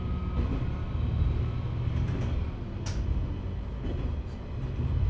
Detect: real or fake real